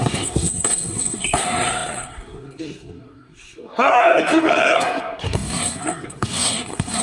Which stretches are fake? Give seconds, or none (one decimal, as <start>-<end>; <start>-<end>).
0.0-7.0

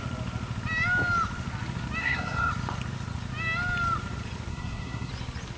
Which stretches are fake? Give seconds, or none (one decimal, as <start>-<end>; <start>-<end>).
2.0-2.5; 4.5-5.1

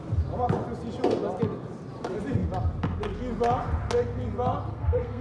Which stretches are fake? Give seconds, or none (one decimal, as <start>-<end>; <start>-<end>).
4.7-5.2